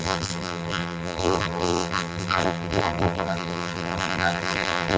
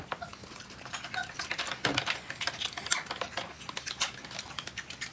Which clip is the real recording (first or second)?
second